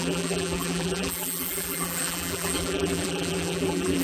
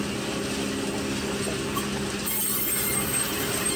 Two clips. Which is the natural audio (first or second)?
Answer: second